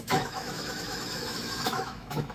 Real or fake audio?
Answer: fake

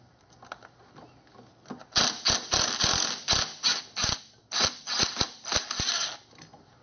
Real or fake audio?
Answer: real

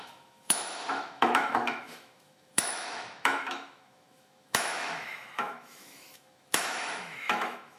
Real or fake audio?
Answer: fake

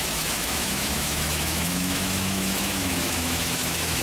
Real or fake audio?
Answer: fake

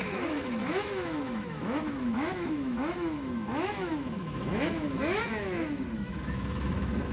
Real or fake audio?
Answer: fake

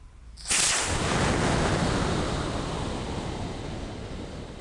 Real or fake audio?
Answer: real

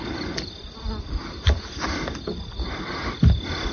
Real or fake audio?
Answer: real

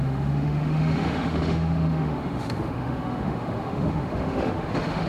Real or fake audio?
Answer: fake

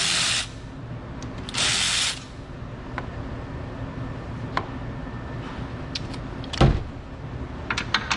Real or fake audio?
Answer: real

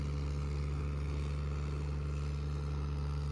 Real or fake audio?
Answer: real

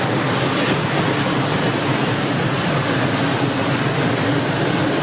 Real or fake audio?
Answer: real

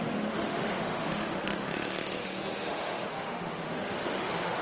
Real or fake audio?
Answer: fake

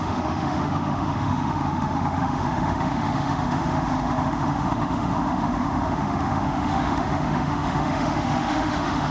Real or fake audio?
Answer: fake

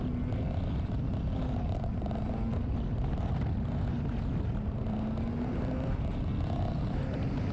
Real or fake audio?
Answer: real